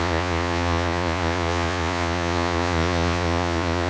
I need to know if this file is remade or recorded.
remade